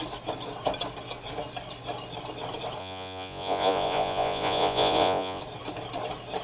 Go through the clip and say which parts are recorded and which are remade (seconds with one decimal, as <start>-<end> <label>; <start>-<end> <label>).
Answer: 0.0-2.8 recorded; 2.8-5.4 remade; 5.4-6.4 recorded